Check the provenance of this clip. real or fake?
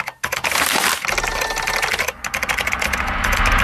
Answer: real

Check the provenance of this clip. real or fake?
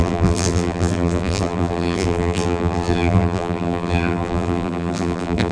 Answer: fake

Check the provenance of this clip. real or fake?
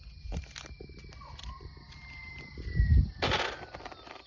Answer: real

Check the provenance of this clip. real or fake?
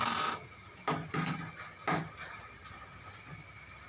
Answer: real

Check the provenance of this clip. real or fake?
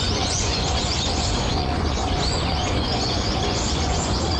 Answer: fake